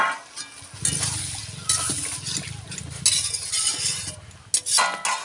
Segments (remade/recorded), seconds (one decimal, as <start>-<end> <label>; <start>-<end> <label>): 0.0-5.2 recorded